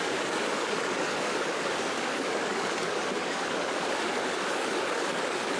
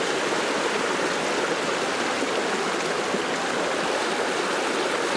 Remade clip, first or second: first